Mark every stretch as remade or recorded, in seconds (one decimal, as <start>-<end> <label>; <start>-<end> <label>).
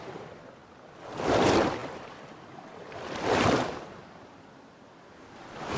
0.0-5.8 recorded